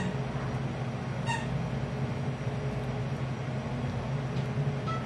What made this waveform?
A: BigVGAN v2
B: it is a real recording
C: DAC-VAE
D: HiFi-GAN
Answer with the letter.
B